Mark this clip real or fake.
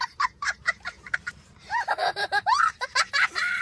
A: fake